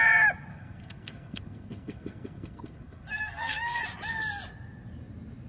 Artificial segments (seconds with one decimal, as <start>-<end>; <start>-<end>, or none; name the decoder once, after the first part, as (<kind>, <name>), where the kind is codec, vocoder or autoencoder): 0.5-3.8 (codec, SNAC)